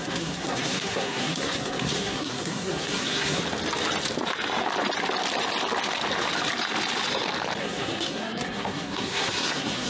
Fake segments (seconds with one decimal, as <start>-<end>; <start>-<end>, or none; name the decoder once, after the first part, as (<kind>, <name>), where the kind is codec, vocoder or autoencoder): 0.0-3.4 (codec, SNAC); 7.6-9.9